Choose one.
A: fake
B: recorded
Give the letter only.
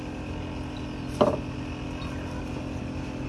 B